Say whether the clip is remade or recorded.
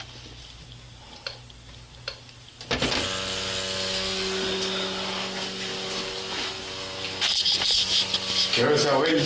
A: recorded